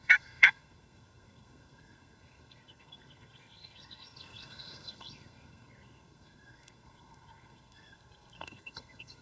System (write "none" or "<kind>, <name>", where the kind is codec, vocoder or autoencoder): codec, SNAC